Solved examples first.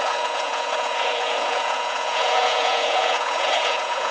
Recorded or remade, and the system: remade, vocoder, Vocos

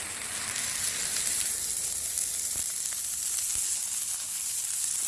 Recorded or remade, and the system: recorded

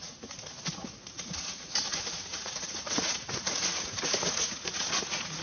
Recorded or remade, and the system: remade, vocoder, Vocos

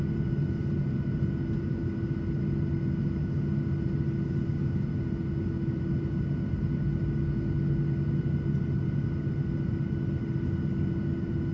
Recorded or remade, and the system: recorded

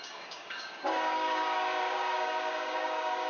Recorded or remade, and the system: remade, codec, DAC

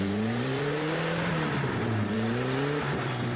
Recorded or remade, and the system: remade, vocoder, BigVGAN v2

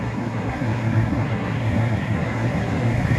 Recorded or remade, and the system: remade, codec, SNAC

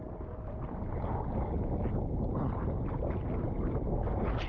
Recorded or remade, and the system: recorded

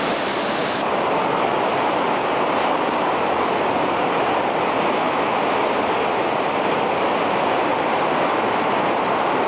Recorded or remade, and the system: recorded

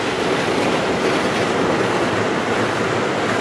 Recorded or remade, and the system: recorded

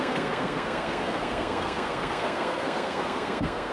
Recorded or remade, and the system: remade, codec, SNAC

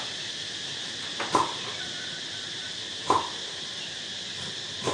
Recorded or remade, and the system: recorded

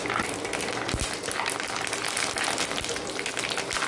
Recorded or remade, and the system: recorded